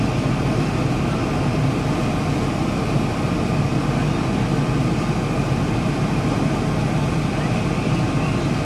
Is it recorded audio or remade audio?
remade